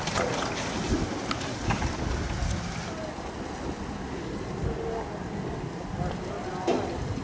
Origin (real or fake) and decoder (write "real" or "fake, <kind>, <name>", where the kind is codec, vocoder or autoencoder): real